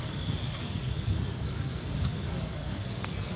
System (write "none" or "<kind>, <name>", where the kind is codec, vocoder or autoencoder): codec, SNAC